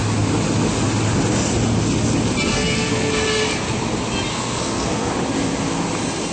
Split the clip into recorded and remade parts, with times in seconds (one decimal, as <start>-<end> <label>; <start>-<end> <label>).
0.0-2.5 recorded; 2.5-3.1 remade; 3.1-4.3 recorded; 4.3-5.1 remade; 5.1-6.3 recorded